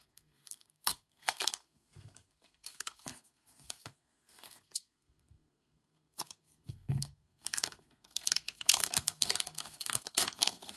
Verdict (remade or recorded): remade